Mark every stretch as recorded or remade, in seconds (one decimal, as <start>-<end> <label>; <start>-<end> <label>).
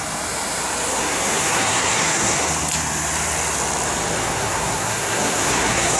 0.0-0.9 recorded; 0.9-2.5 remade; 2.5-4.2 recorded; 4.2-6.0 remade